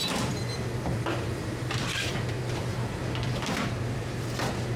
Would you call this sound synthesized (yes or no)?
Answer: yes